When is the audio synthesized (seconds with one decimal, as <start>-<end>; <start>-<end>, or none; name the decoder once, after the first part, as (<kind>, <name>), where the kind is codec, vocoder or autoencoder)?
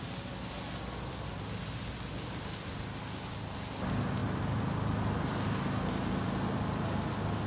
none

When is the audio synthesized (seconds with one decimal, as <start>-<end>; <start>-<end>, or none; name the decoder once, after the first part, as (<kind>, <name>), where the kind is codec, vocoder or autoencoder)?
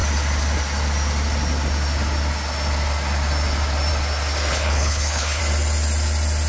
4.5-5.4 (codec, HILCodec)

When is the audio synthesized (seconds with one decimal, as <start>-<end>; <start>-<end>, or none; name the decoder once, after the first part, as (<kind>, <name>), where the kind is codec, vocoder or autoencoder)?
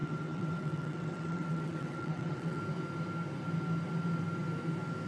0.0-2.6 (vocoder, WaveNeXt)